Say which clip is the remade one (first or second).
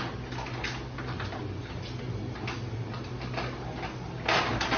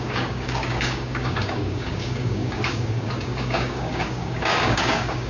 second